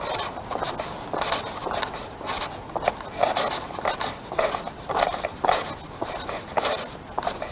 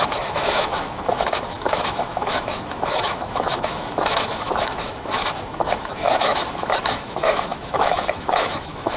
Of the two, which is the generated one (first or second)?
second